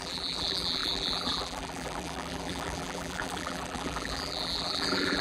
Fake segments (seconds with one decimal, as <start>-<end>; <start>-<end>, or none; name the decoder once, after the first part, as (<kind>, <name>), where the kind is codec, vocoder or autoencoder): 0.0-5.2 (vocoder, BigVGAN v2)